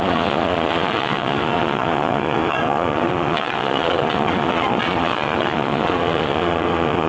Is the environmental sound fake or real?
fake